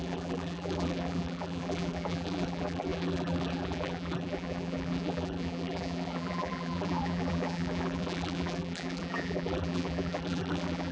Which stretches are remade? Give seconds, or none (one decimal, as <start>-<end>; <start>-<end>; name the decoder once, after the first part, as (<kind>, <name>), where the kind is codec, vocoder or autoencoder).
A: 0.0-10.9 (vocoder, BigVGAN v2)